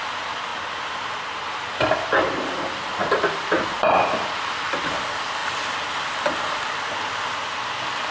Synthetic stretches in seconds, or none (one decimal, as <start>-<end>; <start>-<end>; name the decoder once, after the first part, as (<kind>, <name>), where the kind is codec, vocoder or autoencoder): none